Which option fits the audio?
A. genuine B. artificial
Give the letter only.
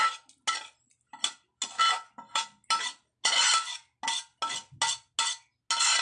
A